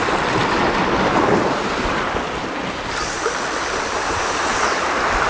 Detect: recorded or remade recorded